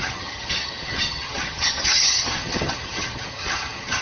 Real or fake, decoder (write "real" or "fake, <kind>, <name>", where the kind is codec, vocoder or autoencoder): fake, vocoder, HiFi-GAN